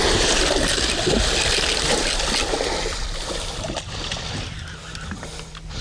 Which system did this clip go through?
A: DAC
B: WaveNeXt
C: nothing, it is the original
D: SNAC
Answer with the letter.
C